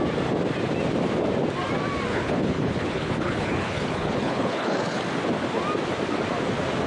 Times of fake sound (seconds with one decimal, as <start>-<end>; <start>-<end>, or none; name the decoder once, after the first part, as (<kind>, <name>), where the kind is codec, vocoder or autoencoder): 2.1-5.0 (codec, HILCodec)